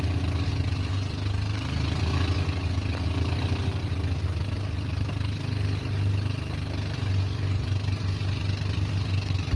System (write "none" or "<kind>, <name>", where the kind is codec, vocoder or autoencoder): none